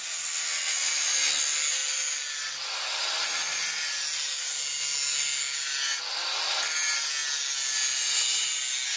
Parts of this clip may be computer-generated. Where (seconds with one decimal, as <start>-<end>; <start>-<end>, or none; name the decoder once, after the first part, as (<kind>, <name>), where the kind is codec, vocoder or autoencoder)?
none